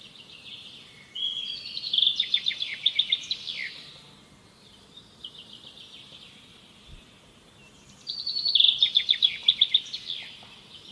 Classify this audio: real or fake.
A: real